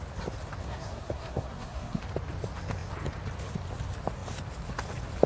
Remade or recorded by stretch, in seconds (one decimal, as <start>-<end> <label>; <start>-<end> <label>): 0.0-0.6 recorded; 0.6-2.0 remade; 2.0-5.3 recorded